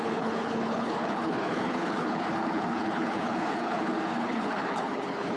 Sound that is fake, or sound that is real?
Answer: fake